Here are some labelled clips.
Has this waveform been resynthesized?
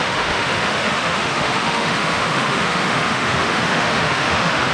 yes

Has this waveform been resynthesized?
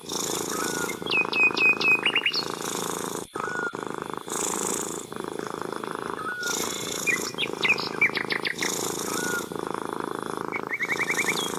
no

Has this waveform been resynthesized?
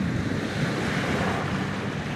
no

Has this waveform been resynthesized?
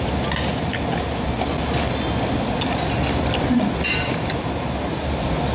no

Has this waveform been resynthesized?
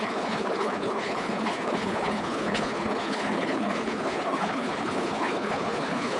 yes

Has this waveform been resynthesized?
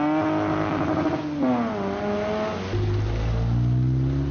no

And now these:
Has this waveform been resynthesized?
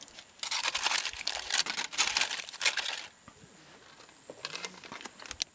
no